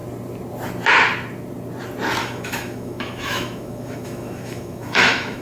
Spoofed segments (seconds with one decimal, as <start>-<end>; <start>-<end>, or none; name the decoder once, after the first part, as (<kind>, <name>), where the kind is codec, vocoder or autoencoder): 2.2-5.4 (autoencoder, DAC-VAE)